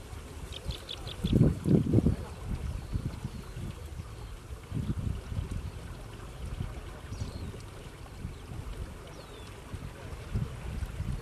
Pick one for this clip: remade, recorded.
recorded